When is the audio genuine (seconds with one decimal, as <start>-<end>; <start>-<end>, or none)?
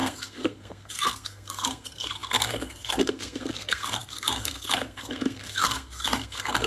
none